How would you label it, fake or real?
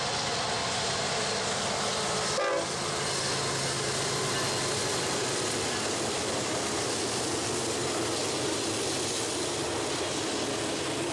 real